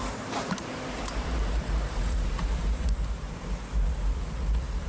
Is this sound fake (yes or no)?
yes